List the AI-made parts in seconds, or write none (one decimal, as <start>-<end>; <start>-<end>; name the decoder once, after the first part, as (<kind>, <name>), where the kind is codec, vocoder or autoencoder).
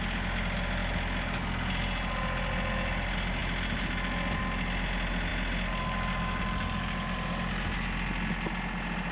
none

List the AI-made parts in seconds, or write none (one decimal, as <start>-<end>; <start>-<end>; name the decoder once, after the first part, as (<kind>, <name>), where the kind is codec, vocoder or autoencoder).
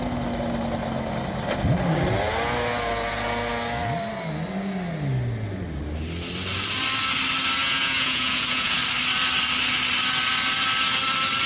7.6-8.8 (vocoder, Vocos)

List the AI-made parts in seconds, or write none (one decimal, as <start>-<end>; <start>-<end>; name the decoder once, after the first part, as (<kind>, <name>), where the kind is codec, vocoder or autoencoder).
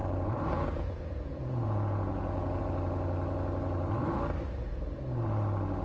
0.0-2.6 (vocoder, Vocos)